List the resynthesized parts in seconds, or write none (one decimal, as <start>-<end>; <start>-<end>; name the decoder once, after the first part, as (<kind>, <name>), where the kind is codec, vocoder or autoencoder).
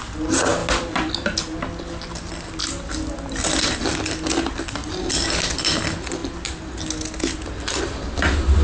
none